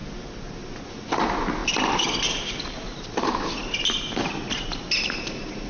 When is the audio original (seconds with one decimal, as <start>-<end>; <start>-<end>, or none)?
0.0-5.7